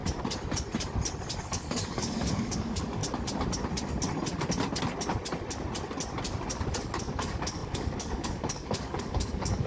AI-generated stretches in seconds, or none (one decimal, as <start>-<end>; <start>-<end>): 1.4-3.0; 7.0-9.7

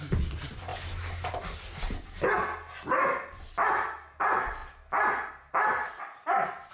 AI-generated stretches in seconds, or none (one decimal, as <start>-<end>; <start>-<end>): none

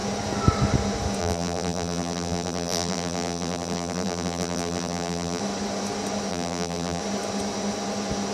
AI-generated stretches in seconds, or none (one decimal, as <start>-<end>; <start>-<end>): 1.2-5.4; 6.3-7.0

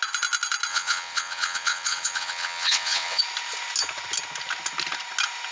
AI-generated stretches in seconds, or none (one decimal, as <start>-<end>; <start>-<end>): 0.7-3.2

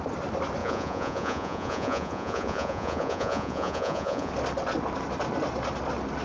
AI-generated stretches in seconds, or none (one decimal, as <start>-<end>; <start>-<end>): 0.6-4.3

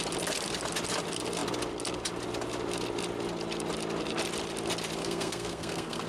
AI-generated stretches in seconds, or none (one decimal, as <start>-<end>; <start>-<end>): 5.0-6.1

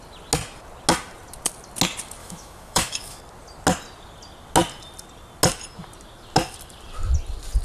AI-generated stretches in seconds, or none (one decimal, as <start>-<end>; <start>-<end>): 2.2-3.2

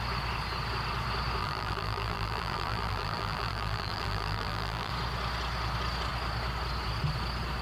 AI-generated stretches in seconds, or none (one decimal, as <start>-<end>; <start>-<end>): 1.4-4.9